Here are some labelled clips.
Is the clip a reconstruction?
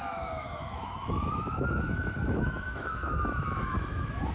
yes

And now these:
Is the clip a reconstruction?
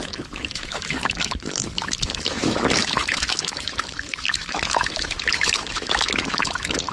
yes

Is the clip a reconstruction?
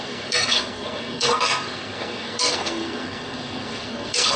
yes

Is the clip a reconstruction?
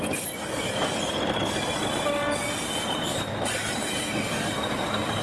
no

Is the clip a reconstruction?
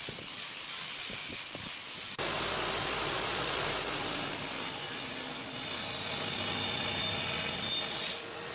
no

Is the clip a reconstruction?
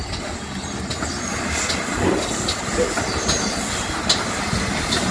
no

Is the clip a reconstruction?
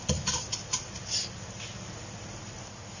no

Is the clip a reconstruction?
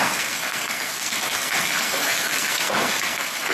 yes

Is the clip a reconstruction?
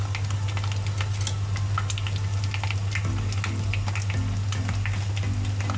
no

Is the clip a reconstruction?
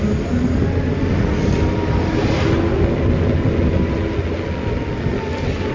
no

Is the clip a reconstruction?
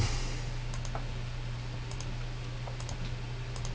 no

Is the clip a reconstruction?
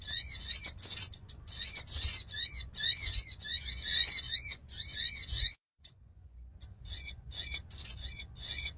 yes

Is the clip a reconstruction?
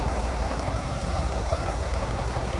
yes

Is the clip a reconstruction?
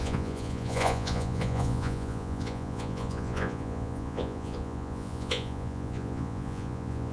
yes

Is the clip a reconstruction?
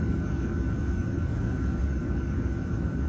yes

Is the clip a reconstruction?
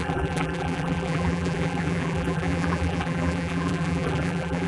yes